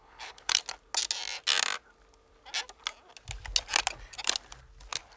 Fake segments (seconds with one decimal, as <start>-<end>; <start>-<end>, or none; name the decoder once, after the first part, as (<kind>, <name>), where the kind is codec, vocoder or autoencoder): 0.0-0.6 (codec, HILCodec)